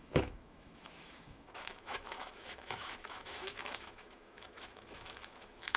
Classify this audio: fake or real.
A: fake